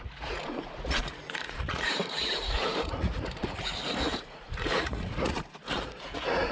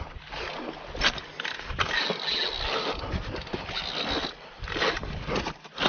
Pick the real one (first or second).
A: second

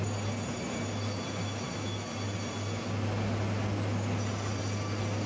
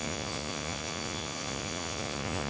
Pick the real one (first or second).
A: first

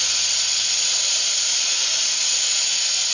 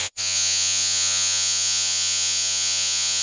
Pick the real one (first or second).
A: first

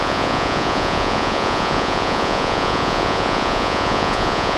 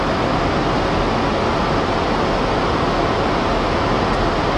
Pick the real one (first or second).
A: second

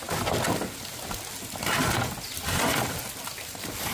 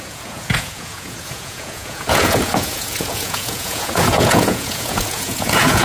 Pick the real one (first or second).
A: first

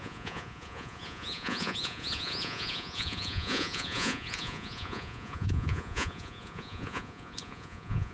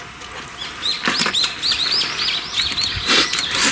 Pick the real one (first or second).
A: second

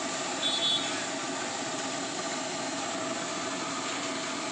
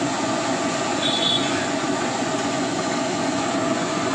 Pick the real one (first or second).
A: first